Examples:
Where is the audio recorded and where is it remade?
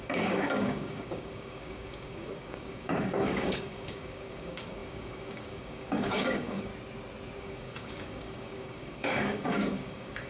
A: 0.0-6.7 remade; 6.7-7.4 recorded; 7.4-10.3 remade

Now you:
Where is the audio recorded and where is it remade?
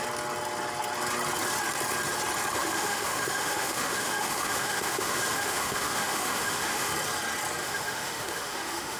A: 0.0-2.6 recorded; 2.6-6.9 remade; 6.9-7.6 recorded; 7.6-9.0 remade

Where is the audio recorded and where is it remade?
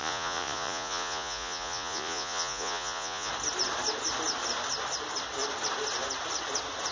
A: 0.0-3.3 remade; 3.3-6.9 recorded